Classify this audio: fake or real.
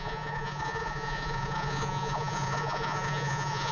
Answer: fake